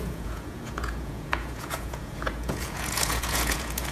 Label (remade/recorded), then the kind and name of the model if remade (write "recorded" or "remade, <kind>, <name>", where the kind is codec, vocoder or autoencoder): remade, vocoder, Vocos